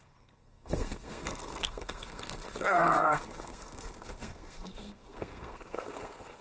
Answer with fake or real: fake